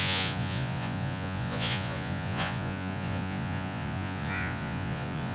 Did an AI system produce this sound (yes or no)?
yes